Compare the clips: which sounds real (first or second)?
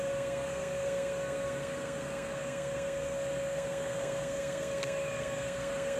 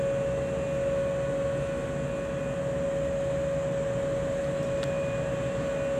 second